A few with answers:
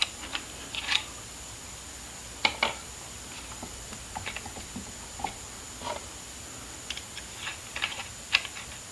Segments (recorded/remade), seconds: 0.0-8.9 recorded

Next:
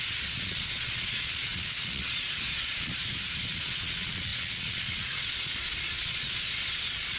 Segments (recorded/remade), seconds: 0.0-2.9 remade; 2.9-3.5 recorded; 3.5-7.2 remade

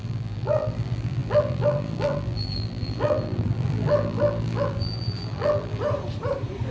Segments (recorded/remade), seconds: 0.0-5.8 remade; 5.8-6.7 recorded

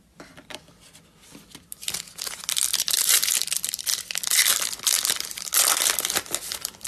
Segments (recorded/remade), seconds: 0.0-6.9 recorded

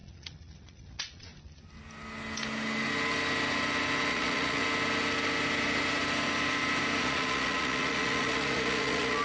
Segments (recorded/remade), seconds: 0.0-1.3 remade; 1.3-4.1 recorded; 4.1-4.6 remade; 4.6-7.0 recorded; 7.0-9.2 remade

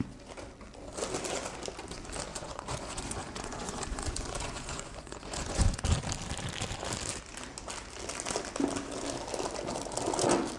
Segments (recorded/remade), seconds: 0.0-2.3 recorded; 2.3-5.8 remade; 5.8-10.6 recorded

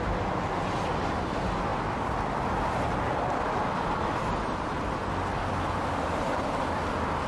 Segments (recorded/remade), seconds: 0.0-7.3 recorded

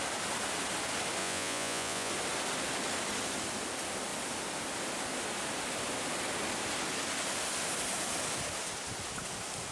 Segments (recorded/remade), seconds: 0.0-1.2 recorded; 1.2-2.1 remade; 2.1-9.7 recorded